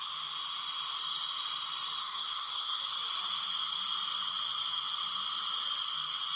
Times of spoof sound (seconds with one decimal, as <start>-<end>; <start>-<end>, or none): 2.0-2.8